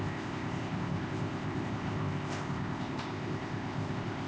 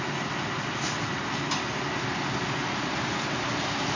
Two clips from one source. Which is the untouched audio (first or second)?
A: second